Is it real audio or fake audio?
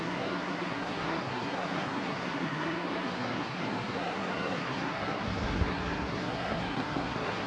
fake